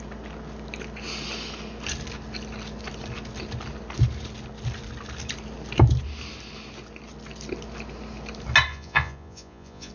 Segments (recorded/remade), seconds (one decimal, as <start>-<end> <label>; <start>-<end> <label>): 0.0-8.7 recorded; 8.7-9.9 remade